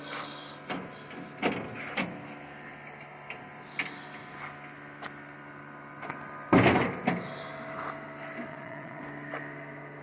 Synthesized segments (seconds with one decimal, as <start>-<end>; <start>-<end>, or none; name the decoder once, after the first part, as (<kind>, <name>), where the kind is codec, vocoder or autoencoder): 8.5-9.0 (vocoder, Vocos)